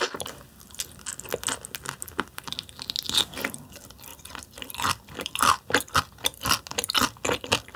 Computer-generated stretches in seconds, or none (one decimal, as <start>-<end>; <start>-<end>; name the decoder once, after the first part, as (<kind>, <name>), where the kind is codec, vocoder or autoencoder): none